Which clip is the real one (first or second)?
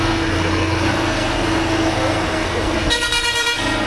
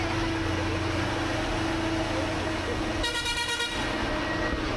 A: second